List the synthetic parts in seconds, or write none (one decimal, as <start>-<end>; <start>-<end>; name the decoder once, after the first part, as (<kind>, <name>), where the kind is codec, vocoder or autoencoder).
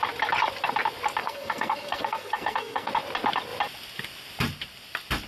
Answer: 1.2-2.9 (codec, SNAC)